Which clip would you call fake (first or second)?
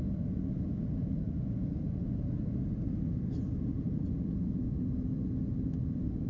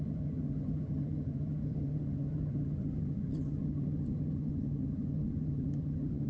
second